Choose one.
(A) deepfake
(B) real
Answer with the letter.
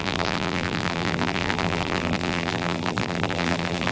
A